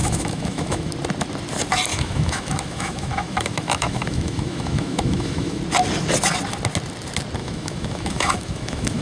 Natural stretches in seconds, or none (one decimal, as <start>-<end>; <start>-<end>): 0.9-1.9; 5.6-7.4